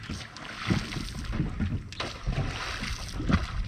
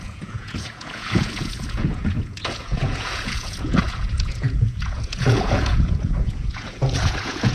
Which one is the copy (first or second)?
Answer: second